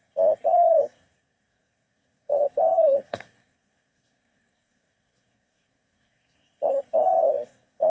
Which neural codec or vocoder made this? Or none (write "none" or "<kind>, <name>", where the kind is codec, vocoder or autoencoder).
codec, SNAC